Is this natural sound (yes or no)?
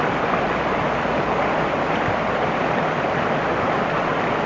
yes